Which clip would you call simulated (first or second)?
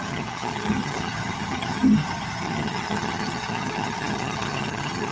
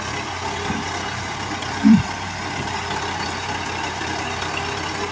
first